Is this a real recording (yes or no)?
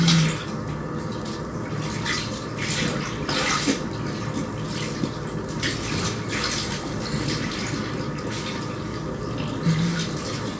yes